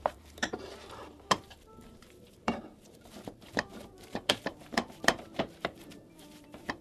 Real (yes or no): no